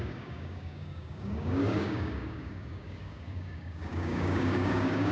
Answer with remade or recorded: remade